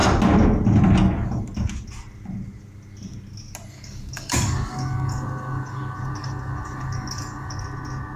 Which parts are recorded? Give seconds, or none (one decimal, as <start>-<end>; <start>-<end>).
0.0-3.7; 7.6-8.2